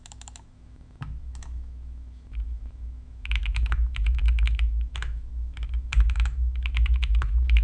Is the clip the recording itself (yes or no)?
no